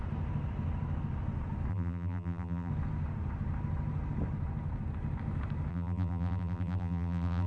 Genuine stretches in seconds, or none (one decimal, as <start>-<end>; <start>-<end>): 0.0-1.7; 2.7-5.7